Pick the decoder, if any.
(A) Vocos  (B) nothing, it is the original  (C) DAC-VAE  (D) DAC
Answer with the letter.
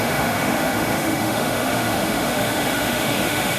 C